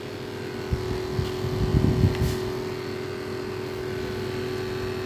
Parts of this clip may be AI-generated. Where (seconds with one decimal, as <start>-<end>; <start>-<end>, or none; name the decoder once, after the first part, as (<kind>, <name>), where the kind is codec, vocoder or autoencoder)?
none